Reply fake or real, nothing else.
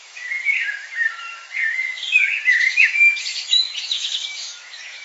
fake